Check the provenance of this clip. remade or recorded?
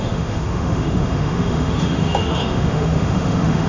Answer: remade